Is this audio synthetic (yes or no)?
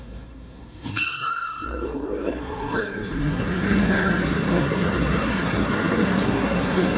yes